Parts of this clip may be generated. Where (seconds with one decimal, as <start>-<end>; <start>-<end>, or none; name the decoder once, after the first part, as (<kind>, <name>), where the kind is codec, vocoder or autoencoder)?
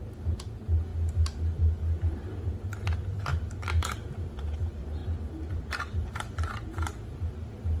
none